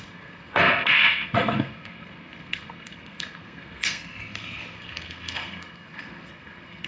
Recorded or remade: remade